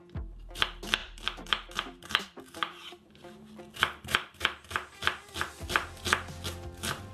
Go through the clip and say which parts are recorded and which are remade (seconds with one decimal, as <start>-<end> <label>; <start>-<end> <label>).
0.0-1.0 recorded; 1.0-1.5 remade; 1.5-2.8 recorded; 2.8-3.7 remade; 3.7-7.1 recorded